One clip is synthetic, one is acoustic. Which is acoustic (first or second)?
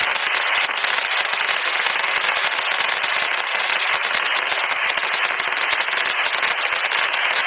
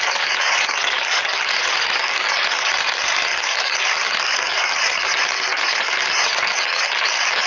first